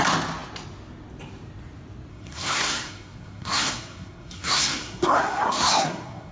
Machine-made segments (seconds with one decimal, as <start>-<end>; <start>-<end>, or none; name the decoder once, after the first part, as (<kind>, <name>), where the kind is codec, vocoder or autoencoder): 2.1-6.3 (codec, SNAC)

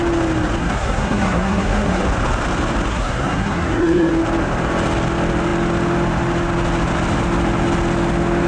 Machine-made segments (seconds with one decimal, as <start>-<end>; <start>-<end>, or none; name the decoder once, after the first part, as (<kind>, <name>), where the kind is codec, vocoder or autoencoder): 0.6-2.0 (codec, SNAC); 2.9-4.1

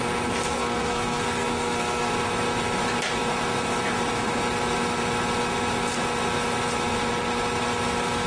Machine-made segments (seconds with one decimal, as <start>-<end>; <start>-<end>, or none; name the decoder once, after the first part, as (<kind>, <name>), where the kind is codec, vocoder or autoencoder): 0.5-2.1 (codec, SNAC)

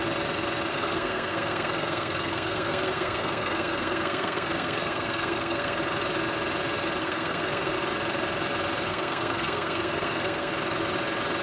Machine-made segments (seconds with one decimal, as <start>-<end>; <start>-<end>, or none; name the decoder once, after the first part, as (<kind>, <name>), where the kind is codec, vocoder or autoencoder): 0.7-5.8 (codec, SNAC); 7.0-7.7; 8.9-10.5

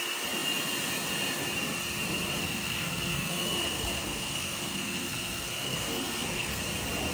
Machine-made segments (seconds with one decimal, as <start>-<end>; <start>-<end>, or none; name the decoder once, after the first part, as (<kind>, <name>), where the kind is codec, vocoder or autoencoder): 2.4-6.6 (codec, SNAC)

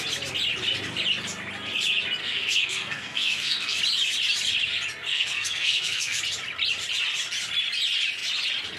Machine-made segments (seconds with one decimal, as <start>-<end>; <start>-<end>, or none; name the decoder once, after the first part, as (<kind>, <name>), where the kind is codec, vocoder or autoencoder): 2.2-3.8 (codec, SNAC); 5.1-6.2

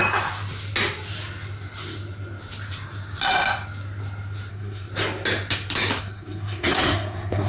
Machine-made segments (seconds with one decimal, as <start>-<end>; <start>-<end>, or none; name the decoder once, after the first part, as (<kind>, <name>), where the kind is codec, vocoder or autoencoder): 4.5-4.9 (codec, SNAC); 6.0-7.5